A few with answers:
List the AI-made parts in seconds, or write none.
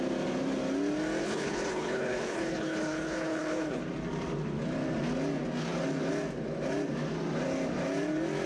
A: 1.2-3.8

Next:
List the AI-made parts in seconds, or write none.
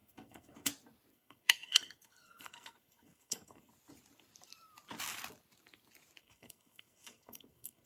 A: 0.0-0.7; 1.1-3.7; 6.2-7.9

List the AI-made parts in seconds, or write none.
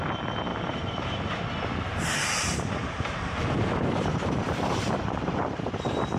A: 0.5-1.3; 1.9-5.6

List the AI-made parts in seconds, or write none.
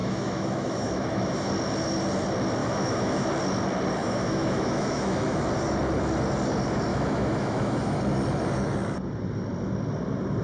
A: 0.0-1.5; 2.6-3.3; 4.0-5.4; 6.9-8.0